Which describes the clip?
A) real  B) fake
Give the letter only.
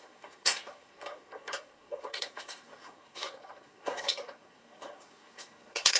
B